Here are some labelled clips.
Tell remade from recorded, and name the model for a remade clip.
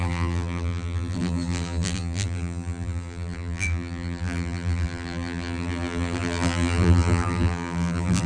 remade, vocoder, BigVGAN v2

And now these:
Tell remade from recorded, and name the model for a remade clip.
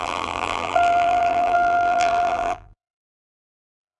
remade, vocoder, BigVGAN v2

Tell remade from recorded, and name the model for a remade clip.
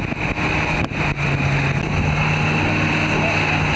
recorded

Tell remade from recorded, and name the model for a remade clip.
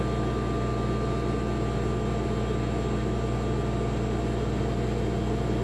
recorded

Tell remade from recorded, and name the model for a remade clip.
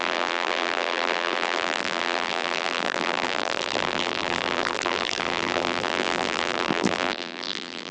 remade, vocoder, BigVGAN v2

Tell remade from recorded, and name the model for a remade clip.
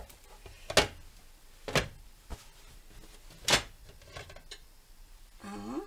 recorded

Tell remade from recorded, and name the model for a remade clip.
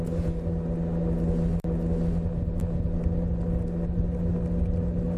recorded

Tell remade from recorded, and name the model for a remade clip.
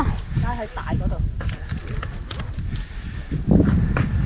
remade, vocoder, BigVGAN v2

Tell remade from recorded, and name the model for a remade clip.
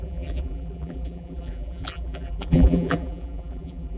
remade, vocoder, BigVGAN v2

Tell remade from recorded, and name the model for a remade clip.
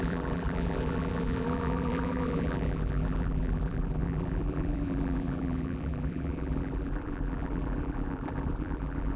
remade, vocoder, BigVGAN v2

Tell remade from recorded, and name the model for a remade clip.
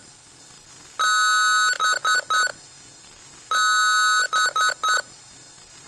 recorded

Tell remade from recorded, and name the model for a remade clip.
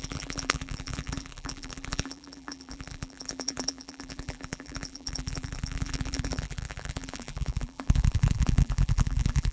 remade, vocoder, BigVGAN v2